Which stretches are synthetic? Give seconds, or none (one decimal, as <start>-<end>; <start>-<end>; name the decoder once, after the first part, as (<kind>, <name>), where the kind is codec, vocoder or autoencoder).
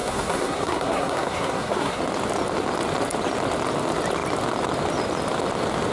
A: 0.0-2.0 (codec, SNAC)